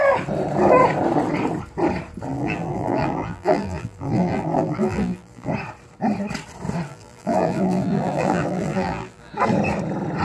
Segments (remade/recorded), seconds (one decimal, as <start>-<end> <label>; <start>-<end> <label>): 0.0-2.3 recorded; 2.3-5.5 remade; 5.5-6.9 recorded; 6.9-9.3 remade; 9.3-10.2 recorded